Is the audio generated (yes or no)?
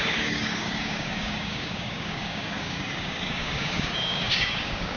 yes